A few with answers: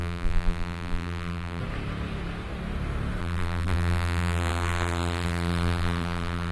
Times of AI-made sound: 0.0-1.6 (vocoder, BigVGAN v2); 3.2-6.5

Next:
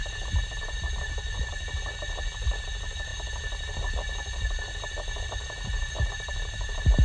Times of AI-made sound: none

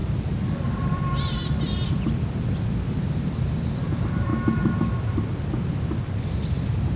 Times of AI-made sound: 0.0-4.3 (vocoder, BigVGAN v2)

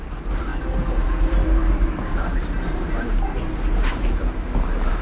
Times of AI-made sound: 0.0-5.0 (vocoder, BigVGAN v2)

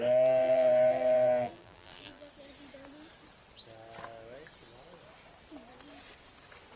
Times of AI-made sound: 0.4-2.3 (vocoder, BigVGAN v2)